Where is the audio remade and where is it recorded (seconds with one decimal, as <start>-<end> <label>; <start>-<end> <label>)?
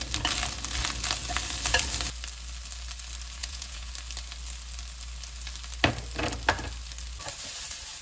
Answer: 0.0-3.4 recorded; 3.4-3.9 remade; 3.9-8.0 recorded